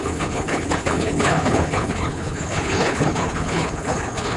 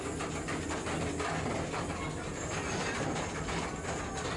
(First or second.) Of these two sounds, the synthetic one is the first